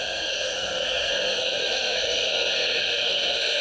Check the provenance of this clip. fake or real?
fake